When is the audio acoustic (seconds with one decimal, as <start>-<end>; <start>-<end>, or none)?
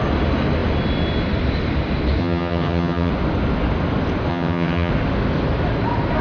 0.0-2.2; 3.1-4.3; 4.9-6.2